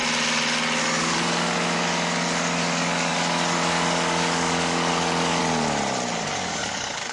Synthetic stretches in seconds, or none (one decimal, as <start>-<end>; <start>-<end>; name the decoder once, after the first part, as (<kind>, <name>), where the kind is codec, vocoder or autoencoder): 0.8-5.4 (codec, DAC); 6.2-7.1